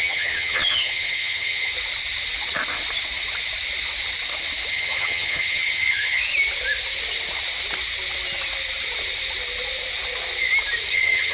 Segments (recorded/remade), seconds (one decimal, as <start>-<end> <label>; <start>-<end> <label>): 0.0-1.7 remade; 1.7-4.7 recorded; 4.7-6.2 remade; 6.2-10.9 recorded; 10.9-11.3 remade